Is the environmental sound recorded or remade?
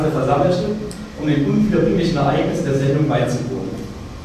recorded